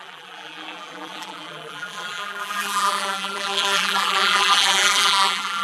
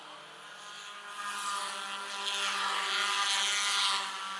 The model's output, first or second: first